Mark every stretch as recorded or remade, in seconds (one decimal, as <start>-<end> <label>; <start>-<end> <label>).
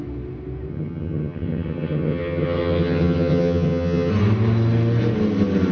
0.0-0.7 recorded; 0.7-4.1 remade; 4.1-5.7 recorded